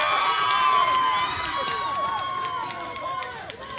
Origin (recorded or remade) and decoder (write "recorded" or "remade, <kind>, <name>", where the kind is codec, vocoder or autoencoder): recorded